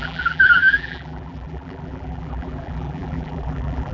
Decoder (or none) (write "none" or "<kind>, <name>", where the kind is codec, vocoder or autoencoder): vocoder, BigVGAN v2